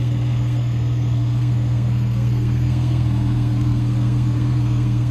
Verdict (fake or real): fake